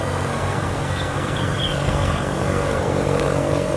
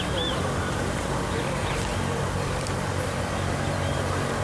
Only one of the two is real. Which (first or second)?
second